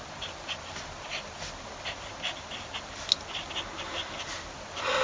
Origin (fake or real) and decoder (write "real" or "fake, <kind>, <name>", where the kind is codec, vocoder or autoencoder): real